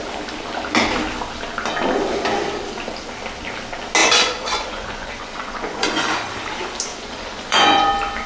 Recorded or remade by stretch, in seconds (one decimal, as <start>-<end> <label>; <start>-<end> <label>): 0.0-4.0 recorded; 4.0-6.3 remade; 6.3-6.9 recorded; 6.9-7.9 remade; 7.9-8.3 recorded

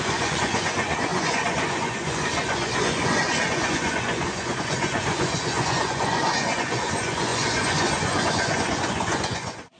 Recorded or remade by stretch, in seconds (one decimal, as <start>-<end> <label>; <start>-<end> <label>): 0.0-9.8 remade

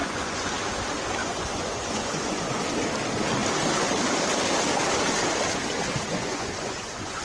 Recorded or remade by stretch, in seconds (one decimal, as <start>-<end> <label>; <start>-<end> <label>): 0.0-0.5 remade; 0.5-1.2 recorded; 1.2-2.6 remade; 2.6-6.1 recorded; 6.1-7.2 remade